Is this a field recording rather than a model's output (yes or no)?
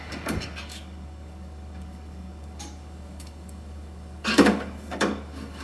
no